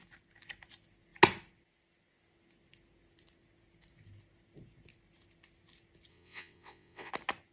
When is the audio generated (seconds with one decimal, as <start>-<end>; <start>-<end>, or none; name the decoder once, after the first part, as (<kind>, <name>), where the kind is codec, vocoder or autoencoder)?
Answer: 6.1-7.1 (vocoder, WaveNeXt)